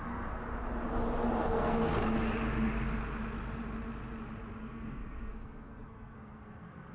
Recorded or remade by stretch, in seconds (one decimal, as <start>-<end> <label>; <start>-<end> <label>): 0.0-0.4 remade; 0.4-1.4 recorded; 1.4-1.8 remade; 1.8-4.6 recorded; 4.6-6.9 remade

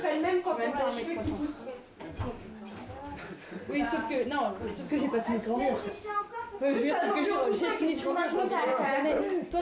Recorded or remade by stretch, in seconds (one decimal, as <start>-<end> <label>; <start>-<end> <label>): 0.0-4.7 recorded; 4.7-5.6 remade; 5.6-9.6 recorded

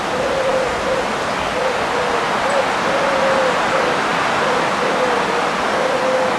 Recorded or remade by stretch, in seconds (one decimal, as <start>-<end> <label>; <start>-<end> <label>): 0.0-6.4 recorded

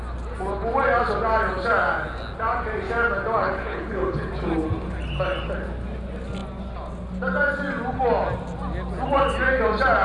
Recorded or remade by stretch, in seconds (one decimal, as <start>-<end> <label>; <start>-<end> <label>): 0.0-3.4 recorded; 3.4-4.3 remade; 4.3-10.0 recorded

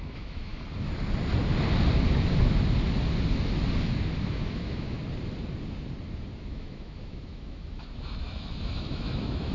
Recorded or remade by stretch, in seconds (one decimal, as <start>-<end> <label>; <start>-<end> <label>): 0.0-0.5 remade; 0.5-4.2 recorded; 4.2-5.0 remade; 5.0-6.4 recorded; 6.4-9.5 remade

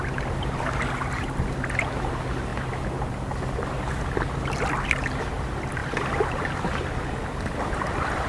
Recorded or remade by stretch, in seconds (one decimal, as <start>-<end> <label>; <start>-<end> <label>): 0.0-8.3 recorded

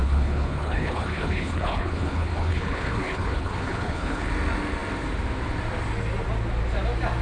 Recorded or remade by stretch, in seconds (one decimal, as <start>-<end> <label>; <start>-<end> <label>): 0.0-4.3 remade; 4.3-7.2 recorded